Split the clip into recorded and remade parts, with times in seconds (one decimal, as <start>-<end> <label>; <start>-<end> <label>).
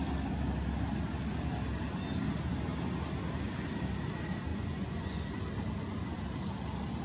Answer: 0.0-4.5 recorded; 4.5-5.4 remade; 5.4-7.0 recorded